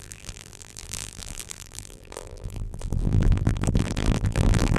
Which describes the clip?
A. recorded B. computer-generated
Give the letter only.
B